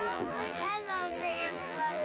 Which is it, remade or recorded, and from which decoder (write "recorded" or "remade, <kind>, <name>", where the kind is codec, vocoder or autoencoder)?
remade, vocoder, BigVGAN v2